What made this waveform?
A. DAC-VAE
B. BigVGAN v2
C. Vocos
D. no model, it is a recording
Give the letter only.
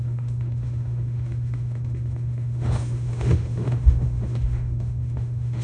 A